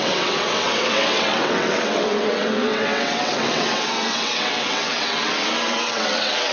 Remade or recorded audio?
remade